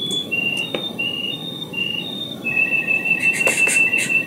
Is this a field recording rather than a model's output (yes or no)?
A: yes